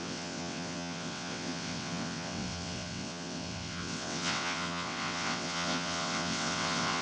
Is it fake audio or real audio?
fake